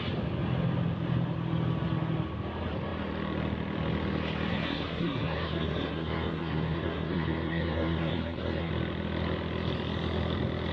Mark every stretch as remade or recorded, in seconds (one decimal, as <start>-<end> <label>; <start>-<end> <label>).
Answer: 0.0-4.5 recorded; 4.5-8.7 remade; 8.7-10.7 recorded